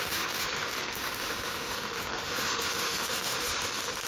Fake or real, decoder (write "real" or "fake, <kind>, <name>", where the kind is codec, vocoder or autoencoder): fake, autoencoder, DAC-VAE